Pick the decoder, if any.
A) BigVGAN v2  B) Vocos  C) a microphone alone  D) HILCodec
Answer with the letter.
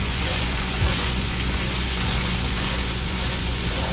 B